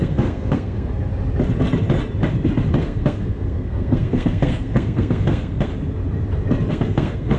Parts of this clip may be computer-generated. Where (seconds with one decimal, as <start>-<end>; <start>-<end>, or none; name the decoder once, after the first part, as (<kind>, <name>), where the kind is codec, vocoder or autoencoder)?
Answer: 0.0-1.1 (codec, SNAC); 2.8-5.7; 6.7-7.4